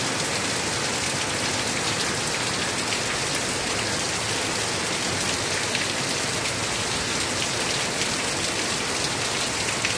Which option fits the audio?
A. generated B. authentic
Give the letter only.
B